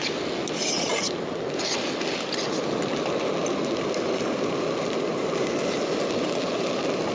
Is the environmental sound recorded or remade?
recorded